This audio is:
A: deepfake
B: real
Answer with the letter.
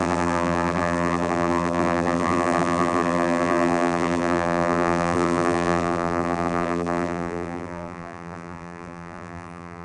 A